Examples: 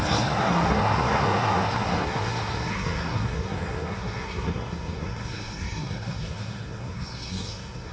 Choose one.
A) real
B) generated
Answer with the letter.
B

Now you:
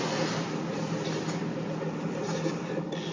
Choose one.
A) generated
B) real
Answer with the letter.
B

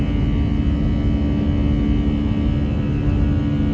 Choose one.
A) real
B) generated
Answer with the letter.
A